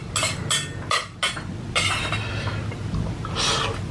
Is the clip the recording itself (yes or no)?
yes